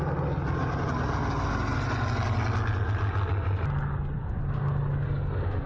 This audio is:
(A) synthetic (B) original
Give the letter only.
B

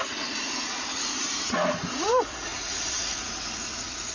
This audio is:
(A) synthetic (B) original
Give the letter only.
A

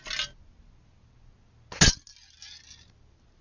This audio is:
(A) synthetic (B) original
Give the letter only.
B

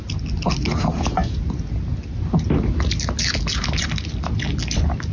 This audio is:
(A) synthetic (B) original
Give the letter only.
B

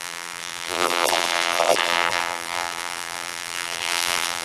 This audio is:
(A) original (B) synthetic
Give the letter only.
B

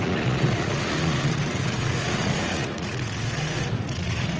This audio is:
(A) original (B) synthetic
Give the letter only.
B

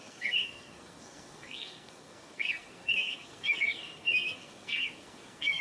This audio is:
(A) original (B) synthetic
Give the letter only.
B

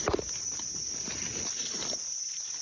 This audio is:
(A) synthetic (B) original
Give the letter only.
B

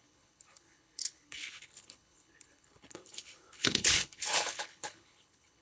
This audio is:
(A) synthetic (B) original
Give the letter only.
A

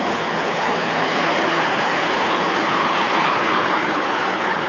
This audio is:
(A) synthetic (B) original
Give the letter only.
A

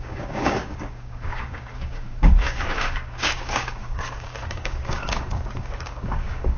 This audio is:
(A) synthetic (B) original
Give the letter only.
A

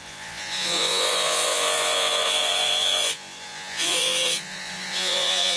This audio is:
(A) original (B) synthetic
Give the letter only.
B